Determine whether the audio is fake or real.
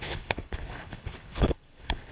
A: fake